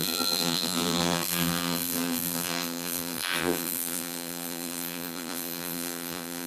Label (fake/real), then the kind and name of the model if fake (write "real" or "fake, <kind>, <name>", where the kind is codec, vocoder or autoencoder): fake, vocoder, BigVGAN v2